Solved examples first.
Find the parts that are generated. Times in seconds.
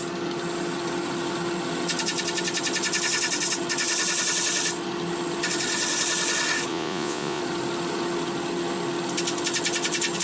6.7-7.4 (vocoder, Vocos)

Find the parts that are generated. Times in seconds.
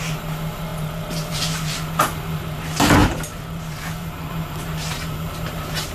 0.0-5.9 (vocoder, BigVGAN v2)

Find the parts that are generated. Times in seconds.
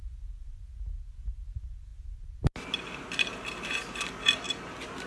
none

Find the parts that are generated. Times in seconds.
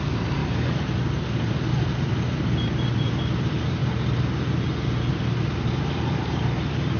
0.0-3.8 (vocoder, BigVGAN v2); 5.1-7.0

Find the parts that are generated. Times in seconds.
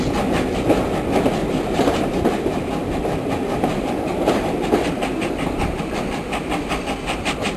1.4-5.8 (vocoder, BigVGAN v2)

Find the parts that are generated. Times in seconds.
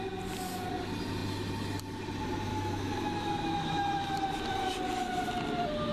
2.5-4.1 (autoencoder, DAC-VAE)